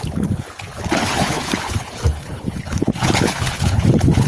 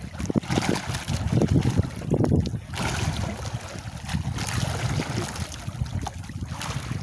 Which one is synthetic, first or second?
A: first